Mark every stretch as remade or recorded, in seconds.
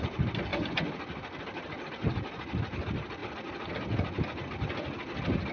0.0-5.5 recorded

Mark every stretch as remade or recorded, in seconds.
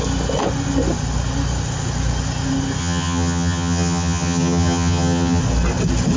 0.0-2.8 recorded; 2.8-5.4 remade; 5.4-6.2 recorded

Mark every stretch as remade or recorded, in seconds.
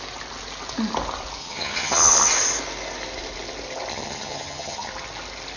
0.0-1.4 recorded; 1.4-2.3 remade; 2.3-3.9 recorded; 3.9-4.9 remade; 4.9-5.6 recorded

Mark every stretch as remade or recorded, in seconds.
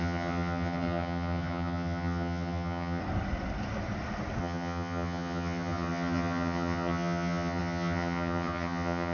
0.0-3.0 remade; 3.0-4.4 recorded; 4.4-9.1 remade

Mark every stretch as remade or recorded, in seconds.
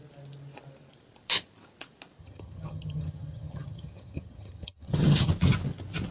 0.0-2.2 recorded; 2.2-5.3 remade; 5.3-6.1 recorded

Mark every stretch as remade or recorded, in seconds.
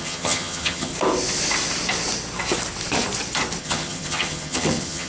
0.0-0.9 remade; 0.9-3.6 recorded; 3.6-5.1 remade